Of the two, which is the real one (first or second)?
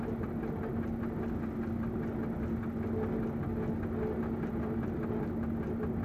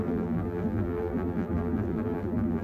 first